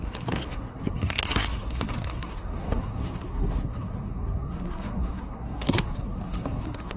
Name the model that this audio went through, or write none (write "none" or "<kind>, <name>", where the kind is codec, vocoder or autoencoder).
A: codec, SNAC